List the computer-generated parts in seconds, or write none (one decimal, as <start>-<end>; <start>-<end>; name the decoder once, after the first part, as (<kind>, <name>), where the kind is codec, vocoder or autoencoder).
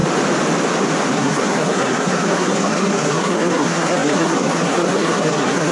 1.1-5.7 (codec, SNAC)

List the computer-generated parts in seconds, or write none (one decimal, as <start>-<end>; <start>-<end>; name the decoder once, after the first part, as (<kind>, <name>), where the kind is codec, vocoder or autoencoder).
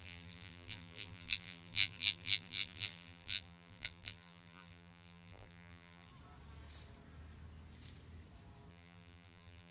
0.0-6.1 (vocoder, BigVGAN v2); 8.7-9.7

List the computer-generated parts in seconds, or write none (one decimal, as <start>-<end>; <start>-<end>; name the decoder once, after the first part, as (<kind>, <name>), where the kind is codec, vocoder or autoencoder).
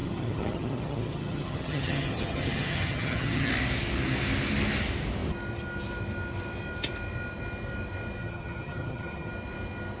0.0-3.5 (vocoder, HiFi-GAN); 8.2-9.3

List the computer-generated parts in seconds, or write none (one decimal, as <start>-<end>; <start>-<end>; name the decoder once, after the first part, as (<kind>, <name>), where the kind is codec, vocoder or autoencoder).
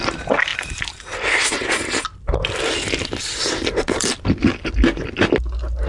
none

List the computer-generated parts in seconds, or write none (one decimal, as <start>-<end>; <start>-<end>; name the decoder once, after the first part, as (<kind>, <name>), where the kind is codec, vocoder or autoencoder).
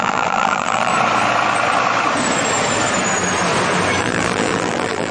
0.0-0.9 (vocoder, BigVGAN v2); 4.0-5.1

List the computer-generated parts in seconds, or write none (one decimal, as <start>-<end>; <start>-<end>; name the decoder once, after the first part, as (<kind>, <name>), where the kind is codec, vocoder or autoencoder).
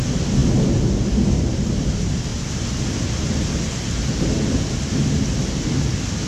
none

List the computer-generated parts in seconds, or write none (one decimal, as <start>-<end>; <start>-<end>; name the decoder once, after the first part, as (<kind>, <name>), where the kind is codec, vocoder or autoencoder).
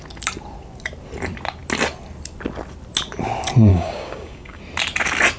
3.7-4.6 (codec, DAC)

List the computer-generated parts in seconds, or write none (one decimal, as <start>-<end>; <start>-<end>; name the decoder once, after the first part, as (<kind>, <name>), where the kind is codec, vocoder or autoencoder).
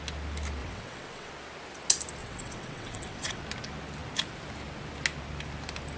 0.6-1.3 (vocoder, WaveNeXt); 2.2-3.4